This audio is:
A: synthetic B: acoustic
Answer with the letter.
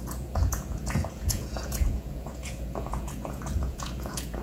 A